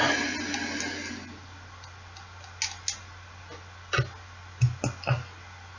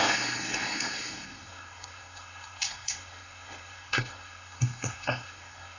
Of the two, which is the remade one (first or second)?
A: second